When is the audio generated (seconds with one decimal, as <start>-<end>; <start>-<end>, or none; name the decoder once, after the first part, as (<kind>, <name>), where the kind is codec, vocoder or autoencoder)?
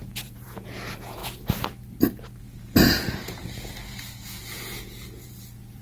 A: 0.0-1.2 (vocoder, Vocos); 2.4-3.4; 3.9-5.8